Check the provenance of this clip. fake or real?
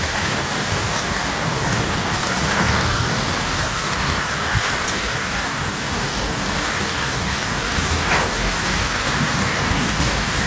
fake